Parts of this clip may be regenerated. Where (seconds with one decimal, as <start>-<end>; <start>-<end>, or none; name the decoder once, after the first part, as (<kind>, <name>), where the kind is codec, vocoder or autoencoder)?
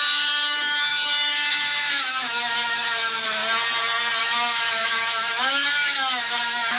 0.0-3.4 (autoencoder, DAC-VAE); 4.2-6.8